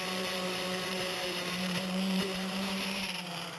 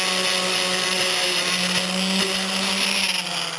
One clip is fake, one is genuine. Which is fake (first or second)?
first